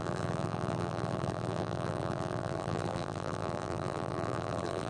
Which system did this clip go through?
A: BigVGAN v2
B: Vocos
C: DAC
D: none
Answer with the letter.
A